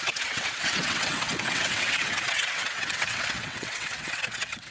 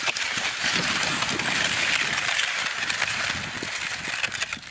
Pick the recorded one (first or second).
second